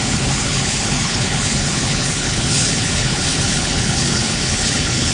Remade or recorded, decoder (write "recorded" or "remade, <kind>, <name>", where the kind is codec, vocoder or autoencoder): remade, codec, HILCodec